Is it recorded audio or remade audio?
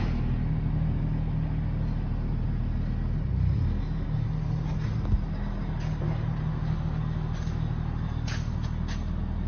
recorded